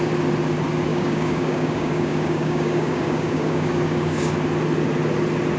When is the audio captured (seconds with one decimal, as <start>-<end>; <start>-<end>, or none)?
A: 0.0-0.9; 4.3-5.6